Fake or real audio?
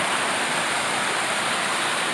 real